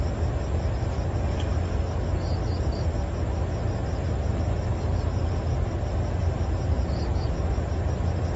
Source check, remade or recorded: recorded